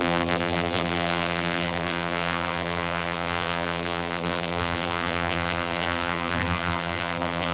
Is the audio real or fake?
fake